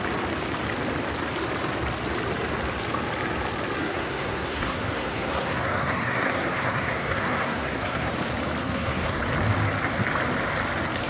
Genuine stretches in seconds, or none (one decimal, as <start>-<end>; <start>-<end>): 0.0-3.8; 8.1-8.6; 9.2-11.1